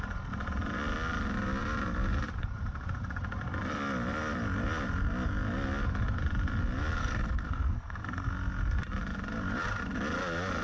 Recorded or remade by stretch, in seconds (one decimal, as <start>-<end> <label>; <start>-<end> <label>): 0.0-7.0 recorded; 7.0-8.3 remade; 8.3-10.6 recorded